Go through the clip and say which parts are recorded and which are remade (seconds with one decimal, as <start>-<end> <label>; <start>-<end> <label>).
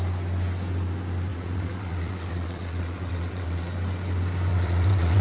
0.0-1.3 recorded; 1.3-3.7 remade; 3.7-4.5 recorded; 4.5-5.2 remade